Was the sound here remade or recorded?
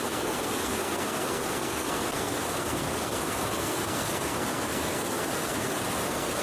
remade